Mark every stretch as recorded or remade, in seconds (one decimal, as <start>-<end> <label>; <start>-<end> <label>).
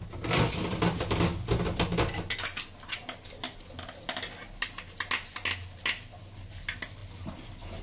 0.0-7.8 recorded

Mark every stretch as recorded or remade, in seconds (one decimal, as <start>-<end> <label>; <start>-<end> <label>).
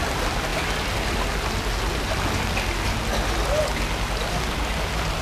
0.0-5.2 recorded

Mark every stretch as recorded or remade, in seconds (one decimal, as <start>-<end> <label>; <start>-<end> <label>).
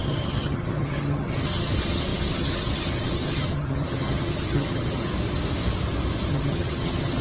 0.0-5.1 remade; 5.1-6.3 recorded; 6.3-7.2 remade